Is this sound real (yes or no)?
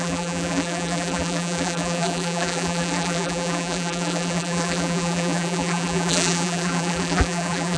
no